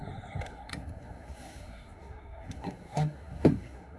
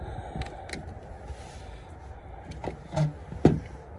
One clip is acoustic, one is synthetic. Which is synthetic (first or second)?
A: first